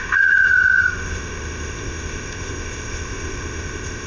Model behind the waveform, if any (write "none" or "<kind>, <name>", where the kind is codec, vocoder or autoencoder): codec, ZipCodec